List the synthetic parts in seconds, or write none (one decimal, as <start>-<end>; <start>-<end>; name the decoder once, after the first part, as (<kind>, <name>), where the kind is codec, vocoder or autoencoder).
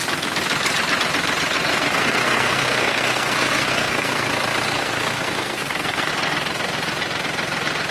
1.7-4.3 (codec, SNAC); 4.8-6.1